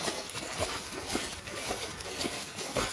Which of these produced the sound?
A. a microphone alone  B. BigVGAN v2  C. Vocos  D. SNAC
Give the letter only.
D